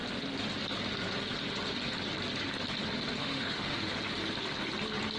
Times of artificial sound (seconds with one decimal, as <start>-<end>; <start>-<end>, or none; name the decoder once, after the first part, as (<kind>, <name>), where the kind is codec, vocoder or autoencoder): 3.2-3.9 (autoencoder, DAC-VAE)